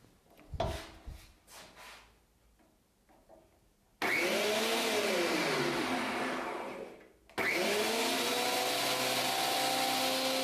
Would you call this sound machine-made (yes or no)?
no